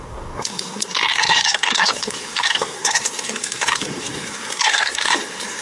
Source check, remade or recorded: remade